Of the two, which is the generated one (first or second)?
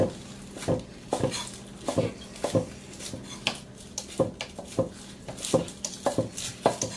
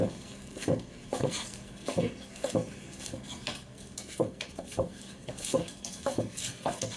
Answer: second